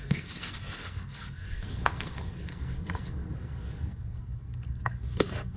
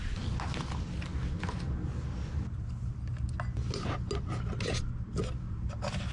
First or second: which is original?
second